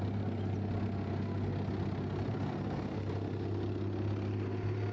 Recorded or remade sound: recorded